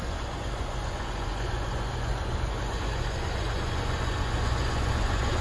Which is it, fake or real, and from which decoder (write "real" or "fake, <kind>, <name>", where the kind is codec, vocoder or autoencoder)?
fake, vocoder, Vocos